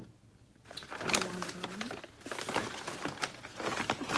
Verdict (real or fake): real